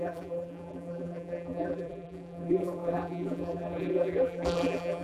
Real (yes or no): no